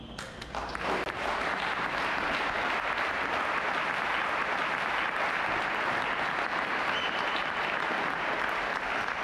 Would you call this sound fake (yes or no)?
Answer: no